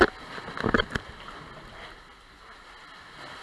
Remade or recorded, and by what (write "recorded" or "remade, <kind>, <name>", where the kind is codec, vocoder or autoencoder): recorded